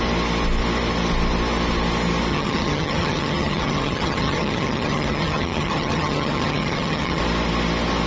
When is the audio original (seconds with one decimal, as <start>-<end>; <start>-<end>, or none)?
0.0-2.3; 7.2-8.1